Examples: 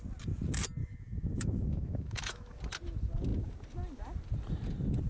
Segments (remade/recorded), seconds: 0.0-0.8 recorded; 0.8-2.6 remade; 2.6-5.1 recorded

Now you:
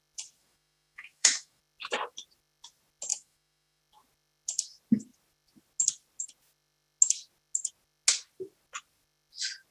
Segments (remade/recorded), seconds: 0.0-0.4 recorded; 0.4-1.6 remade; 1.6-3.1 recorded; 3.1-3.8 remade; 3.8-9.7 recorded